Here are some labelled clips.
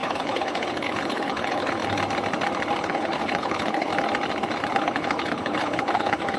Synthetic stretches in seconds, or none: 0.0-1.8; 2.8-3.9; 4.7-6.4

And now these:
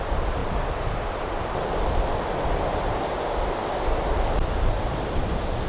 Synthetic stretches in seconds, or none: 0.4-3.2

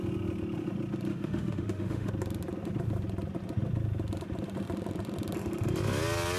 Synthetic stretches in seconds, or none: 1.1-2.1

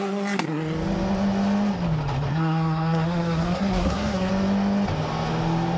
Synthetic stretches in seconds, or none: 2.3-4.3

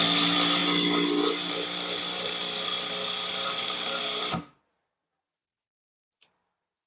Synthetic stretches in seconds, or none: none

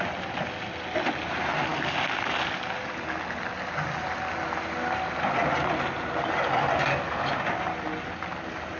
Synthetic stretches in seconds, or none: none

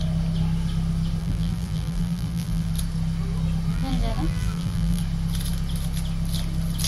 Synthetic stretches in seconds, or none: 1.2-2.7; 3.7-5.0

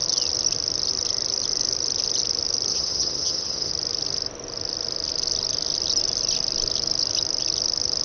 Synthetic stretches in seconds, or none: 2.7-3.7